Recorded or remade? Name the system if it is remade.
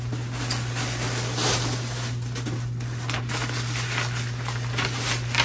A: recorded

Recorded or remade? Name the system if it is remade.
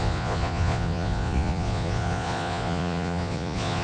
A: remade, vocoder, Vocos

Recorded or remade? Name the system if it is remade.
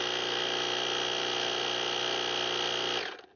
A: recorded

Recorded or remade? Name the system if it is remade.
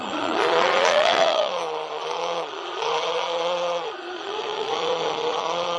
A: remade, vocoder, Vocos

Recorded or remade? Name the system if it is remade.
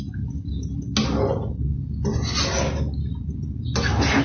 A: recorded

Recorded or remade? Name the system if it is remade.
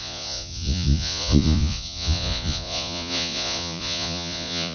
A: remade, vocoder, Vocos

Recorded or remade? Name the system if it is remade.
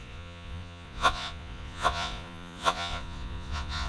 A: remade, vocoder, Vocos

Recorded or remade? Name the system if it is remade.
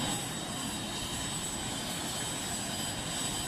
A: recorded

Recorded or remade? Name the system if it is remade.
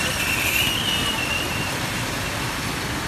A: recorded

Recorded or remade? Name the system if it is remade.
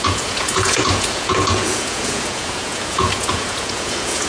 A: remade, vocoder, Vocos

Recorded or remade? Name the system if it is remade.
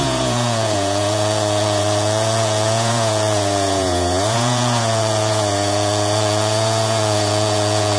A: remade, vocoder, Vocos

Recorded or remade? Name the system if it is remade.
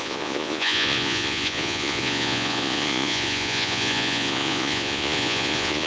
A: remade, vocoder, Vocos